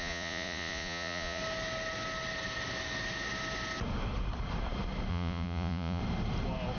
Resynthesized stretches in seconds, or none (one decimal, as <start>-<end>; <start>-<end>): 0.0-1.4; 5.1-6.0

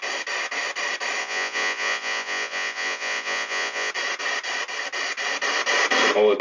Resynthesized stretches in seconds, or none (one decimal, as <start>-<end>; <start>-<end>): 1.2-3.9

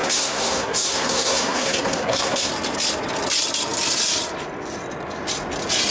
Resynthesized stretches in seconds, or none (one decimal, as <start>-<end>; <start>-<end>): 0.0-2.5

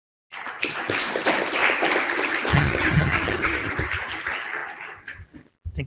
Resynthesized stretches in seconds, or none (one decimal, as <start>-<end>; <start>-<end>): 2.5-3.7